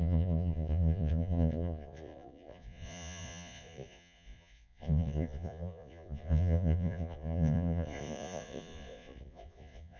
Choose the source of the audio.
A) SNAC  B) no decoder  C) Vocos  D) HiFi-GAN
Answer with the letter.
C